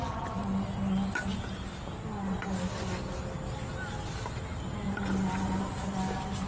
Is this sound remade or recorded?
recorded